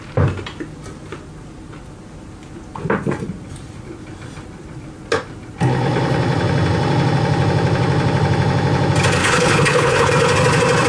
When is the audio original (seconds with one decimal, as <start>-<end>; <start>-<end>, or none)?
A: 0.0-9.2; 10.1-10.9